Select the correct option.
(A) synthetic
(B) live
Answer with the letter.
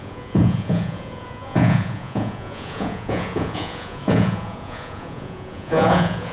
A